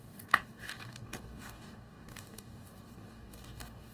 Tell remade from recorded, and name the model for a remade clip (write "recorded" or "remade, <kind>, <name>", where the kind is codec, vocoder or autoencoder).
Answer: remade, codec, DAC